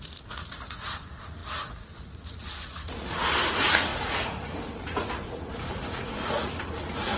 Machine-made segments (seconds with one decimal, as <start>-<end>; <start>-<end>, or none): 0.0-7.2